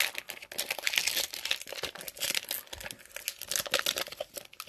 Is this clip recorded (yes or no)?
yes